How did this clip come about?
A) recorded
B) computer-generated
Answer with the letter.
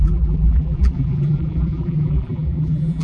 B